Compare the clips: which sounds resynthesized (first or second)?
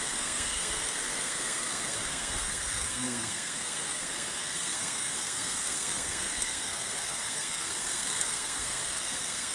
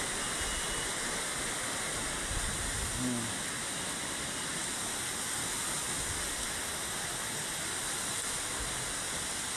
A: first